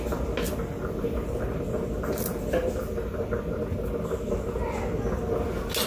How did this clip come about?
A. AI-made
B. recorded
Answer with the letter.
B